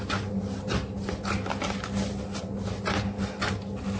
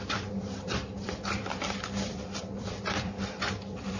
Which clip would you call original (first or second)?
first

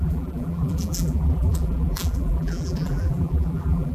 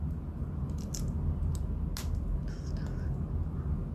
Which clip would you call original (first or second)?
second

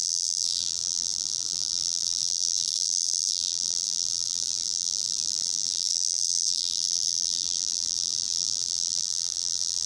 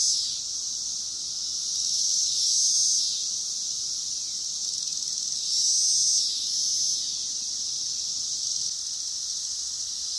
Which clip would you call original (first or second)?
second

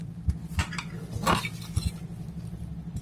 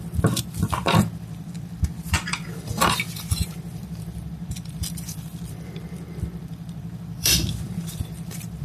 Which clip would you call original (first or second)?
first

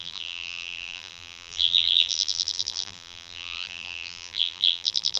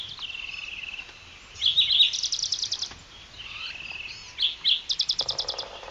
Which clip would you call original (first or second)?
second